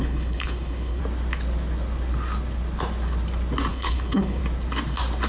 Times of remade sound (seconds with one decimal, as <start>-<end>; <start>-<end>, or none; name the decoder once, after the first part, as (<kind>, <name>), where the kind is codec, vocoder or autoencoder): 0.0-1.0 (codec, HILCodec); 3.7-4.4